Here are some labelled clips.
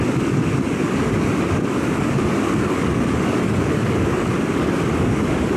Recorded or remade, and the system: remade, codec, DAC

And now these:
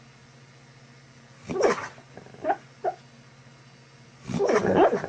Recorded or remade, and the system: recorded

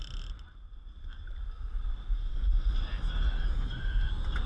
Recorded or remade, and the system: recorded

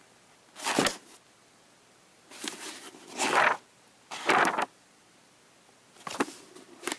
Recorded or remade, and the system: recorded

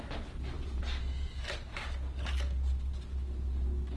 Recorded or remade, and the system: recorded